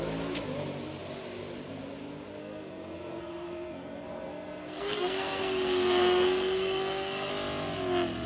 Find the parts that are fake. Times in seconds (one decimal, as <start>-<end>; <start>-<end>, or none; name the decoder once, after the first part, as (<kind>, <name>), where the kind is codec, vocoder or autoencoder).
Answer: 2.4-7.3 (codec, SNAC)